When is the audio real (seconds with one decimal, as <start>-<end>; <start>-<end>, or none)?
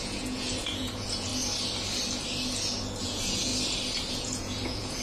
1.3-3.0; 3.5-4.1